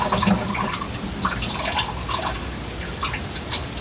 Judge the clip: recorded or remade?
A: recorded